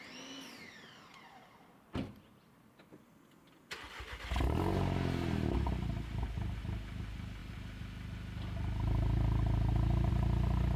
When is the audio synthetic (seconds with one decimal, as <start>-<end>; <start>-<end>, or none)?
none

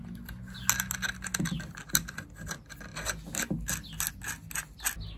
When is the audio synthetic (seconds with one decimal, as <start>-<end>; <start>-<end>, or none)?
1.8-2.5

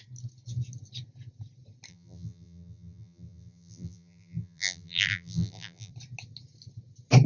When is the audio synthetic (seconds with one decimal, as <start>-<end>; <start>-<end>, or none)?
1.9-5.9

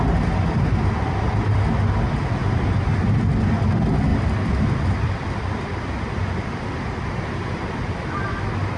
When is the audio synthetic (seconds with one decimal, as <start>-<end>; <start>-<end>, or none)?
2.4-3.0; 4.1-8.8

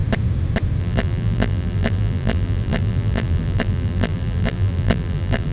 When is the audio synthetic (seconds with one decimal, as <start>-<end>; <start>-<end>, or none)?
0.8-5.5

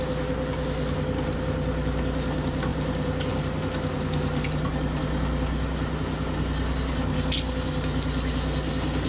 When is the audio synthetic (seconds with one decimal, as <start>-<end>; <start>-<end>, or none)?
2.7-3.3

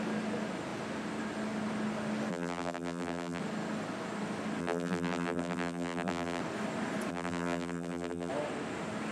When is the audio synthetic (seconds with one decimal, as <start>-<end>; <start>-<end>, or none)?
2.3-3.4; 4.6-6.4; 7.1-8.3

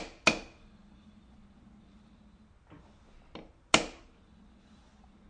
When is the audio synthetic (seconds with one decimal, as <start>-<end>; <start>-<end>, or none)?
none